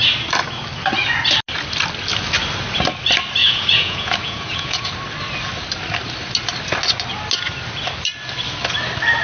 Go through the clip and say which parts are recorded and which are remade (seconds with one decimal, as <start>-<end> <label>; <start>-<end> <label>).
0.0-3.4 recorded; 3.4-4.9 remade; 4.9-9.2 recorded